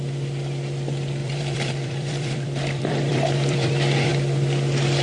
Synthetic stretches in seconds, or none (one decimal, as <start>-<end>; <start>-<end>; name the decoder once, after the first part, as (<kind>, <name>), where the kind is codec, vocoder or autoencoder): 1.2-4.1 (vocoder, BigVGAN v2)

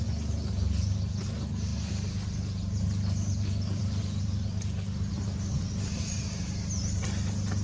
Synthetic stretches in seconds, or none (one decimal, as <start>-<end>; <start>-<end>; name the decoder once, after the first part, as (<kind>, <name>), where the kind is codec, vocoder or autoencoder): none

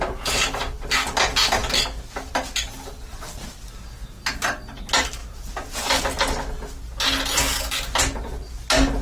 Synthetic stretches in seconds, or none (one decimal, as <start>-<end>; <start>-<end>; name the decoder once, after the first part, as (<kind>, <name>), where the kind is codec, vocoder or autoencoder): none